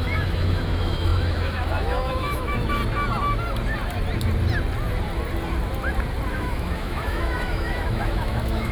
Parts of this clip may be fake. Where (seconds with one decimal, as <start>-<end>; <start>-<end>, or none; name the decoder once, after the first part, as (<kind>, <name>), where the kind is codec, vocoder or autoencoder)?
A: 0.0-2.8 (autoencoder, DAC-VAE); 6.3-8.7